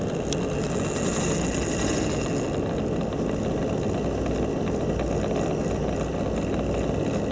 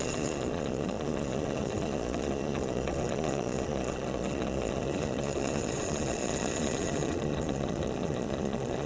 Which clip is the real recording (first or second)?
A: first